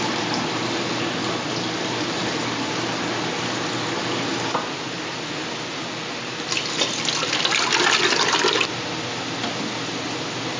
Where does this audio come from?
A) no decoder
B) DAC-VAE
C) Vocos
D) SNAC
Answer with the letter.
A